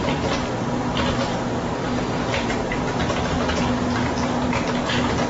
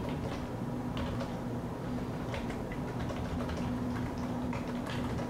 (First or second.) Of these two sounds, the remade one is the second